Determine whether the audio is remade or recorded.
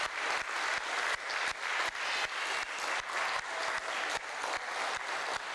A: recorded